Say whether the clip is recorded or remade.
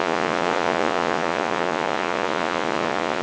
remade